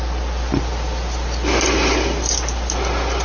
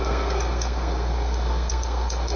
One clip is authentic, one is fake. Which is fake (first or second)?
second